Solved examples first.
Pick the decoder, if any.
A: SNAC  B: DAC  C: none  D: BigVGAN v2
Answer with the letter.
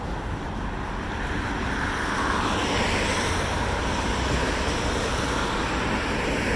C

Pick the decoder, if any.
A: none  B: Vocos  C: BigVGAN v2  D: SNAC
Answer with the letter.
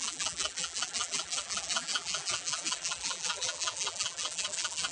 C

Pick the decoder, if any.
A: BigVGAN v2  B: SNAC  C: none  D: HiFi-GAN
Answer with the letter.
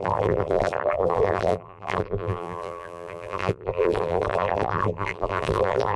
A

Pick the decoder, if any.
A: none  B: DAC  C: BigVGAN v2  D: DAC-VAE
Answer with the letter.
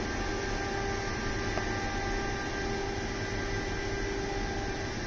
A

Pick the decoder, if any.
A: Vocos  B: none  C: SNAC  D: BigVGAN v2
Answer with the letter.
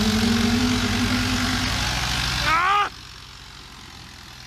B